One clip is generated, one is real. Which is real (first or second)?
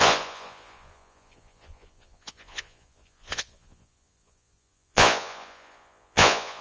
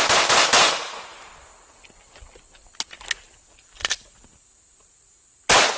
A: second